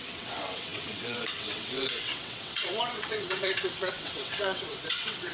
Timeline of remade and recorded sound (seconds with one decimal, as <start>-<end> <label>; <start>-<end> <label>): 0.0-5.3 remade